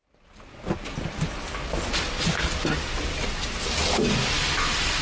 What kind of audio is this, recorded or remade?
recorded